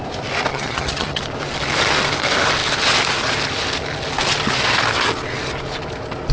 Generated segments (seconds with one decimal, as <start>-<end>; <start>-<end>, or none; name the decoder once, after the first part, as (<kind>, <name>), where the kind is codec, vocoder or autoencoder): 0.5-1.2 (vocoder, HiFi-GAN)